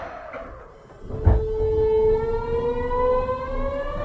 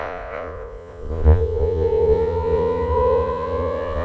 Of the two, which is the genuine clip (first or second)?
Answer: first